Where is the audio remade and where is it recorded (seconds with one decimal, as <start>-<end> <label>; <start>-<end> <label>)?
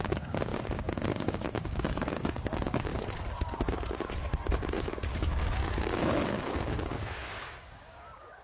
0.0-2.9 remade; 2.9-4.9 recorded; 4.9-8.4 remade